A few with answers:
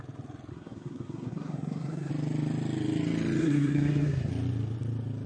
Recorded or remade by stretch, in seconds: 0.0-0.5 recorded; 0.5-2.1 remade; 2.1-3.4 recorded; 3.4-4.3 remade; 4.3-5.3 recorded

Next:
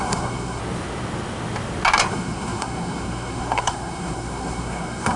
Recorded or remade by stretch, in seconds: 0.0-0.6 remade; 0.6-2.1 recorded; 2.1-5.2 remade